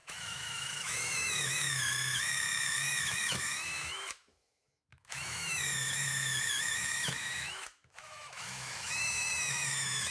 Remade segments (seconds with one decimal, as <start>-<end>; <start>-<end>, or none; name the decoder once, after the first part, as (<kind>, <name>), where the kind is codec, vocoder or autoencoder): 0.0-10.1 (autoencoder, DAC-VAE)